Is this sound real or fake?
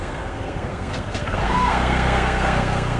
fake